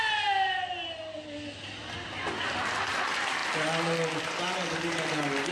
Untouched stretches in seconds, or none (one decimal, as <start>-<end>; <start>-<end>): 0.0-5.5